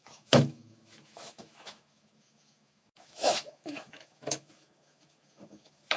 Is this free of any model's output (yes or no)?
no